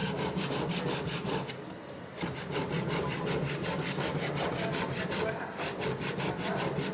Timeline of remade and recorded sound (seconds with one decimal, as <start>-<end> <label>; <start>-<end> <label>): 0.0-0.5 remade; 0.5-6.9 recorded